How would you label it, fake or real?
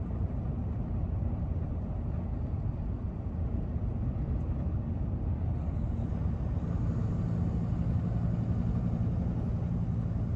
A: real